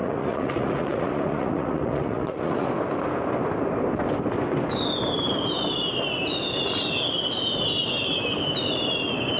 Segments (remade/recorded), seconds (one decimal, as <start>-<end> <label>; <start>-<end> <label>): 0.0-2.7 remade; 2.7-9.4 recorded